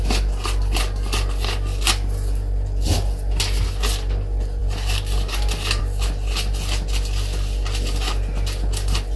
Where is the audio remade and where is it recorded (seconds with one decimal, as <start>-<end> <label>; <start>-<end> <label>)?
0.0-9.2 recorded